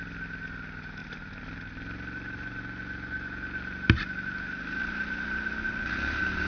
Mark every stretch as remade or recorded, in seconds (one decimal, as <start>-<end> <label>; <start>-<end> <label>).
0.0-6.5 recorded